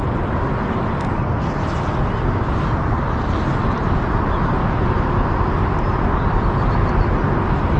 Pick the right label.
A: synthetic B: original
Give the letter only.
B